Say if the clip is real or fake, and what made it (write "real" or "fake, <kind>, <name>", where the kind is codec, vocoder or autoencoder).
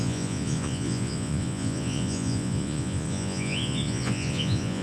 fake, vocoder, Vocos